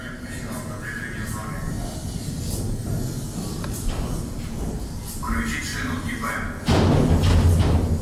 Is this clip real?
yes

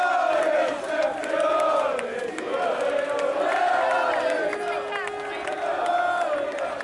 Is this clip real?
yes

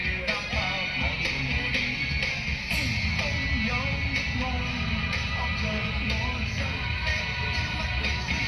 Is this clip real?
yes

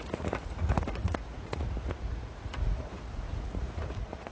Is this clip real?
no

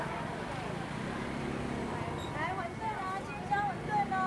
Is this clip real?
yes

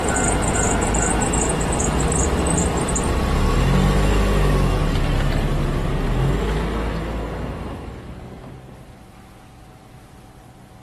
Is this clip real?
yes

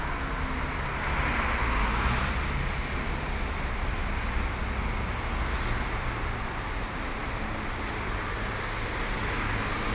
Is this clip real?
yes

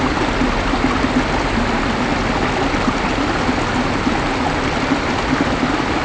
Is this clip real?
yes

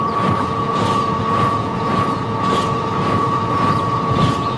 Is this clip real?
no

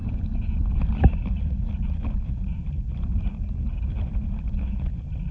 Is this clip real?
yes